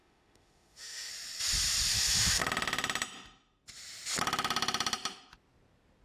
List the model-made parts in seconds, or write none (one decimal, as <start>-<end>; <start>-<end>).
0.0-1.1; 1.9-2.4